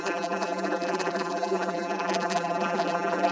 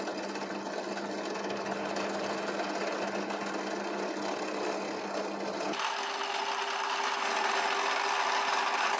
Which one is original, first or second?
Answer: second